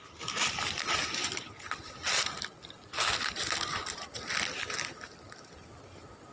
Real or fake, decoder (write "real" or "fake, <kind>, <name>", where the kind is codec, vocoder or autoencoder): real